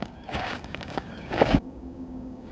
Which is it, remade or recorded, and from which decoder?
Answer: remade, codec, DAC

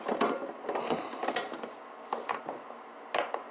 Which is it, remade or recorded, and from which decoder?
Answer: recorded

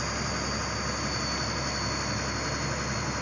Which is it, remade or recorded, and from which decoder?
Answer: recorded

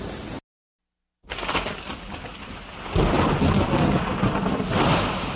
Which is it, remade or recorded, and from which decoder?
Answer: recorded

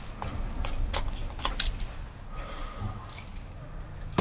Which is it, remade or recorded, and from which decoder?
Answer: recorded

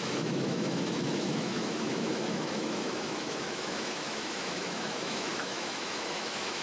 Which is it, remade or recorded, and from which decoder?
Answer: remade, autoencoder, DAC-VAE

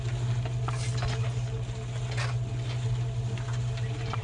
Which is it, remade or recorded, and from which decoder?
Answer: recorded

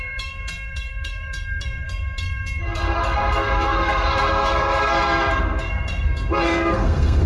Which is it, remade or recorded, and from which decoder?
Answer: remade, codec, SNAC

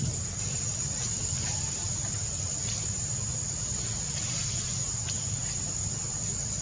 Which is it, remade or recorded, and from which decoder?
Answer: recorded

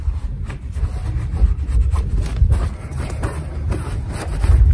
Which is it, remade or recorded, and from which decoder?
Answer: recorded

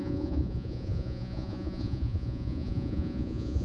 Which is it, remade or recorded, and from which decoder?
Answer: remade, vocoder, Vocos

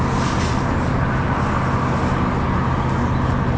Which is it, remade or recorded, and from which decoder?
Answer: recorded